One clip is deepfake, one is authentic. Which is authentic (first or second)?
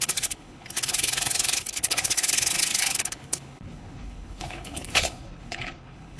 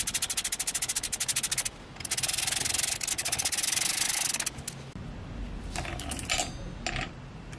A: second